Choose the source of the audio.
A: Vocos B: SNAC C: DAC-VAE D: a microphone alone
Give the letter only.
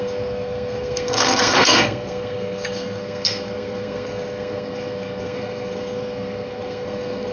B